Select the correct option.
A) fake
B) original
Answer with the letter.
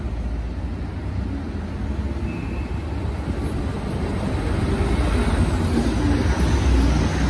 B